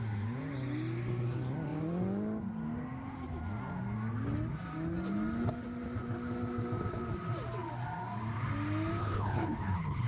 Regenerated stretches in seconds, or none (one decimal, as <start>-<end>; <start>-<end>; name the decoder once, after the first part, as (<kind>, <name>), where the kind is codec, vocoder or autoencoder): 9.0-10.1 (codec, HILCodec)